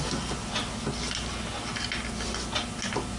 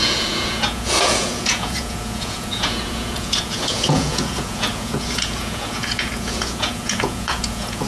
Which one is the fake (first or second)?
second